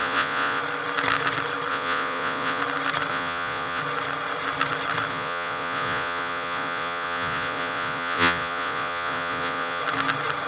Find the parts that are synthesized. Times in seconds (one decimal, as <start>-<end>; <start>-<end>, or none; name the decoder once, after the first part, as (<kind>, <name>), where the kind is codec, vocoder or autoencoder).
0.0-0.6 (vocoder, Vocos); 1.7-2.6; 3.1-3.8; 5.1-9.8